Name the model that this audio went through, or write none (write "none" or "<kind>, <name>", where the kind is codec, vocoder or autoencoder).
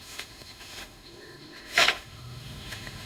autoencoder, DAC-VAE